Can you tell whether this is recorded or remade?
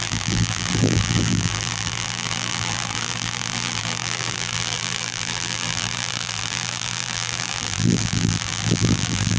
remade